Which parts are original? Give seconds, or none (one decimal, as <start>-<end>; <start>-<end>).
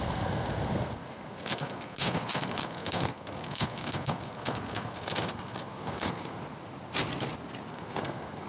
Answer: 6.4-7.7